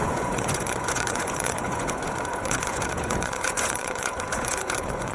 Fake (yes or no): yes